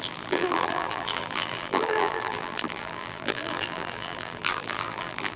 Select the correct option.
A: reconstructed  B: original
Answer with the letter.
A